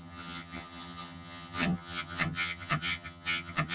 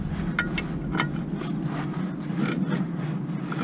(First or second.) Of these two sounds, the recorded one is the second